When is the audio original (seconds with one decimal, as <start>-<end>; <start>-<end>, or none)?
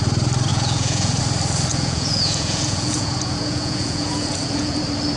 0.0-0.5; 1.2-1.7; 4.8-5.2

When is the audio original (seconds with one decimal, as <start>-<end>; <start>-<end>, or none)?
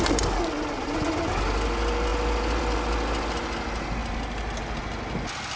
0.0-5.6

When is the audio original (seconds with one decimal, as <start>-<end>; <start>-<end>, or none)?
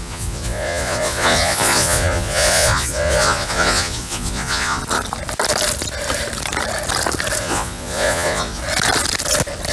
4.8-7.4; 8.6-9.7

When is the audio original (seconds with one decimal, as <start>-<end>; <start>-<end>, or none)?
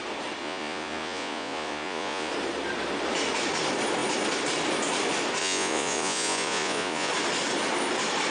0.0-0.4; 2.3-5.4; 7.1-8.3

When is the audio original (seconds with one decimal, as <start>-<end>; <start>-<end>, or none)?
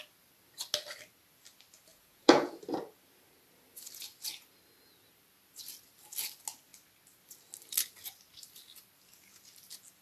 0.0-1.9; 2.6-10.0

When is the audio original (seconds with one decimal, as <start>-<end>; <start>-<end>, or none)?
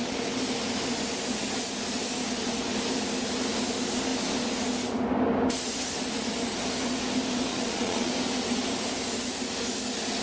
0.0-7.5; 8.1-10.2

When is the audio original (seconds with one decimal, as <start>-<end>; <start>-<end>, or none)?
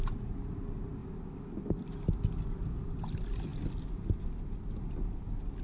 0.0-5.6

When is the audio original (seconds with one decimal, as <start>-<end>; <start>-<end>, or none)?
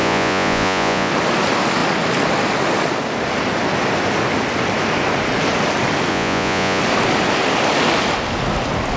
1.1-6.1; 6.8-9.0